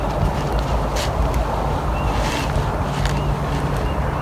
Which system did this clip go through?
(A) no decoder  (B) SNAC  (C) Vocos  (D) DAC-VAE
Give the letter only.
A